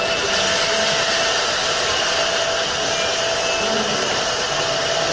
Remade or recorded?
recorded